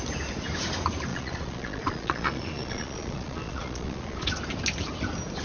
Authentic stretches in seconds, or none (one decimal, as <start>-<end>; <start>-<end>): 0.0-1.1; 4.3-5.4